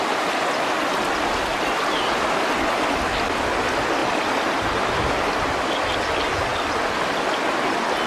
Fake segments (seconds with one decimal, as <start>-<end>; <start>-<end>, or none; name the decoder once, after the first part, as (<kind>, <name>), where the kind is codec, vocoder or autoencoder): none